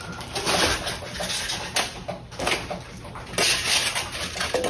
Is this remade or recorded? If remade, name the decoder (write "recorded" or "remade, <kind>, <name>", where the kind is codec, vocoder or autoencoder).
recorded